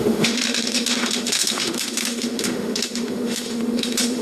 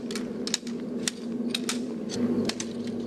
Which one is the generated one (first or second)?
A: first